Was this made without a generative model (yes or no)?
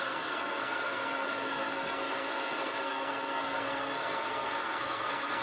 no